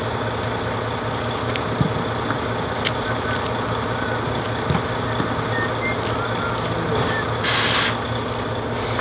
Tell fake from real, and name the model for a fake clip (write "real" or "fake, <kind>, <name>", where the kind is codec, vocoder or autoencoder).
real